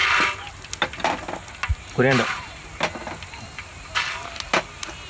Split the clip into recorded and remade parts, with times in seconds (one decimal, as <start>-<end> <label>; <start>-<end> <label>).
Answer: 0.0-1.7 recorded; 1.7-2.6 remade; 2.6-5.1 recorded